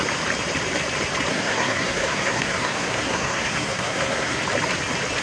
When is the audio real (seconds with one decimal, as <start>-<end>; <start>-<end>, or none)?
0.0-1.3; 4.4-5.2